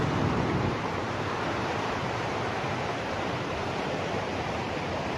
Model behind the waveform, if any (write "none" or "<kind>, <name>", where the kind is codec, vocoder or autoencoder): vocoder, BigVGAN v2